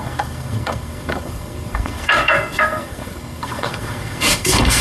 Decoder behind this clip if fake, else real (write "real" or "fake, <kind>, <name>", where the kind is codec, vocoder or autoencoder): fake, codec, SNAC